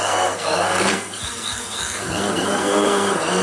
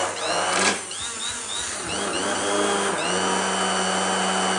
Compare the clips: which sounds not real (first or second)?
first